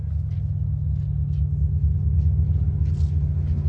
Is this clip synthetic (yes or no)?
no